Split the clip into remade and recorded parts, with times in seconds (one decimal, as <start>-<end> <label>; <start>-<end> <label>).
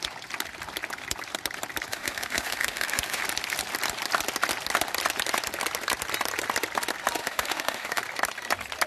0.0-1.9 recorded; 1.9-3.2 remade; 3.2-7.2 recorded; 7.2-8.0 remade; 8.0-8.9 recorded